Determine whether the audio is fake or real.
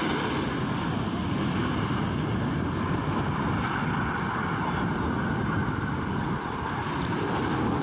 real